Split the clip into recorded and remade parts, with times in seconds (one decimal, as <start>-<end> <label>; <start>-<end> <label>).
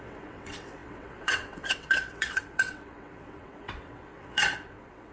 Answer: 0.0-5.1 remade